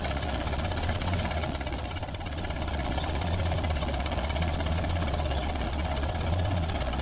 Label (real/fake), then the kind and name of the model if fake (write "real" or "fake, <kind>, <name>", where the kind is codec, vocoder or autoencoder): fake, vocoder, Vocos